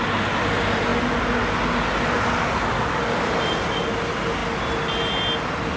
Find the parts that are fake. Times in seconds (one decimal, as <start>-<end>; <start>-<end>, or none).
none